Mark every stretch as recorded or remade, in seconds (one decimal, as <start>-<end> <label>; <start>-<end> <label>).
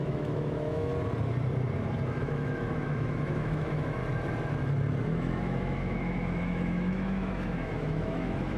0.0-0.9 remade; 0.9-2.2 recorded; 2.2-4.0 remade; 4.0-5.0 recorded; 5.0-8.6 remade